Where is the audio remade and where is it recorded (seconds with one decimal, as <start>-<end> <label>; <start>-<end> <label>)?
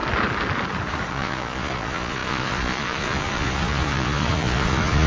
0.0-1.1 recorded; 1.1-5.1 remade